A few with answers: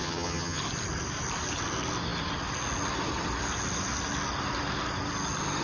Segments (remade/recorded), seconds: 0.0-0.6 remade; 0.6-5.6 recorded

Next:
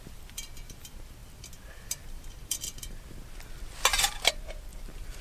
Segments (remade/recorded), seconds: 0.0-4.7 recorded; 4.7-5.2 remade

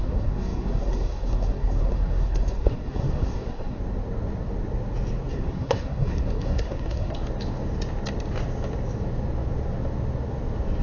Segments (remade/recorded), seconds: 0.0-3.8 remade; 3.8-5.3 recorded; 5.3-7.2 remade; 7.2-10.8 recorded

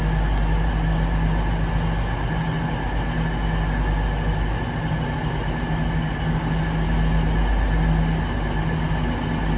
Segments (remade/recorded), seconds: 0.0-9.6 recorded

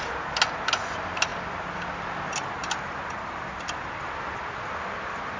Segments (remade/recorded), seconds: 0.0-5.4 recorded

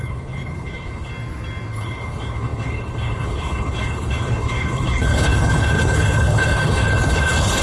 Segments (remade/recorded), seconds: 0.0-1.1 remade; 1.1-1.7 recorded; 1.7-7.6 remade